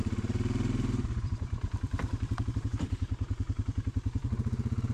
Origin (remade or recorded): remade